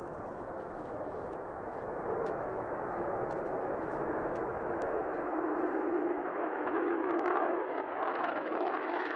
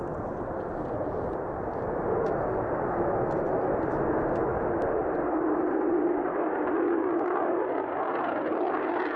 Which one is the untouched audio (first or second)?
second